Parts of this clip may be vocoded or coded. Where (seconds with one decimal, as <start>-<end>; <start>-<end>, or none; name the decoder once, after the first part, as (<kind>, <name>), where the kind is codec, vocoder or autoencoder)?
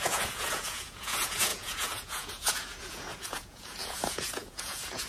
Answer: 0.0-5.1 (vocoder, Vocos)